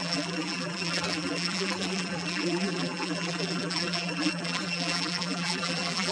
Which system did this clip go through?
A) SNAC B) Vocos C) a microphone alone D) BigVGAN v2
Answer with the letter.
D